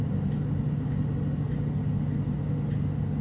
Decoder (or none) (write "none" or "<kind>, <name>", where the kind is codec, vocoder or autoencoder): none